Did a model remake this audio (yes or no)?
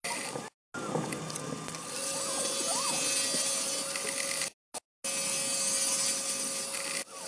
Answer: no